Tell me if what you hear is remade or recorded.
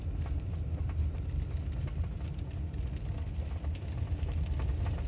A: recorded